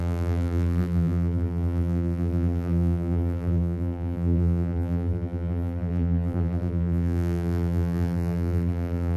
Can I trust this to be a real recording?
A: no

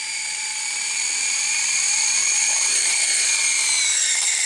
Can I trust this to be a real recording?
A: no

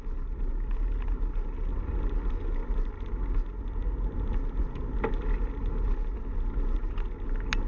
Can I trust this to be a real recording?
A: yes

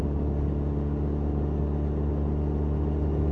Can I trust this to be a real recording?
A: yes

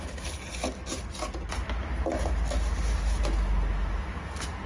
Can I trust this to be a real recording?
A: yes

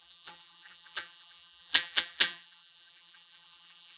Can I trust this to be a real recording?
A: no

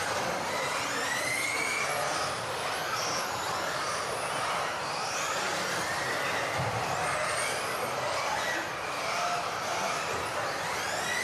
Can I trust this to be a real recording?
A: yes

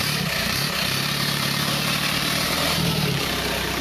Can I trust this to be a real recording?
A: no